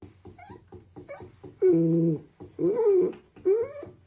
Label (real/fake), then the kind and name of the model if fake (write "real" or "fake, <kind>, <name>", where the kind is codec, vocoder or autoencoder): real